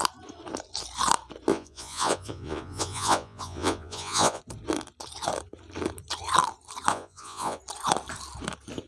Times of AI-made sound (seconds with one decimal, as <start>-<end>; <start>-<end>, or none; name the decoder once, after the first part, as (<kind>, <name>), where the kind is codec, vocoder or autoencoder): 1.5-4.4 (vocoder, Vocos); 6.9-7.6